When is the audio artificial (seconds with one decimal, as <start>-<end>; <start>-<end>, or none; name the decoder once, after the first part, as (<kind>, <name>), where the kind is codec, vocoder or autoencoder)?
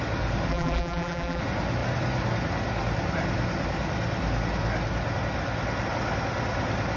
0.5-1.4 (vocoder, BigVGAN v2)